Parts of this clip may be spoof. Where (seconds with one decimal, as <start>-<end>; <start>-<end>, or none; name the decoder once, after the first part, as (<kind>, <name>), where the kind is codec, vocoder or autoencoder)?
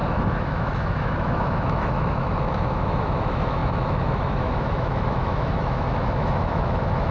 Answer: 0.0-7.1 (autoencoder, DAC-VAE)